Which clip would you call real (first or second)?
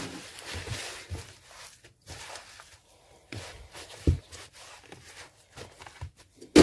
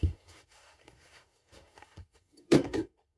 first